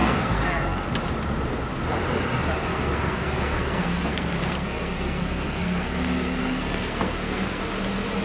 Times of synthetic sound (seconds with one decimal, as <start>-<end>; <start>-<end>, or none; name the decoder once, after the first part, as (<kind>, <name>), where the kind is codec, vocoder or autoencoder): 0.0-0.9 (codec, SNAC); 2.7-7.6